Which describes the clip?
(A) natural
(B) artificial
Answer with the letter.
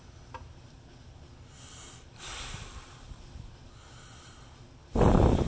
A